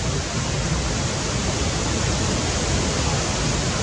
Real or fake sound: real